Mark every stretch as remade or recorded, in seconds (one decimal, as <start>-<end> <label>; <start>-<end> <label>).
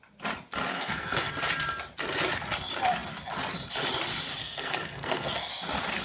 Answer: 0.0-0.7 recorded; 0.7-1.3 remade; 1.3-4.4 recorded; 4.4-5.5 remade; 5.5-6.0 recorded